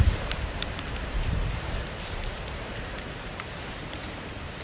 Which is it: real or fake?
fake